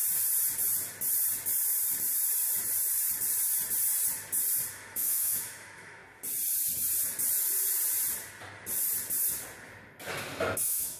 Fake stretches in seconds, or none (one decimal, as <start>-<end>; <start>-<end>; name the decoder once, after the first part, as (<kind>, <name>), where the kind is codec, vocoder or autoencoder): 4.7-6.0 (autoencoder, DAC-VAE); 10.6-11.0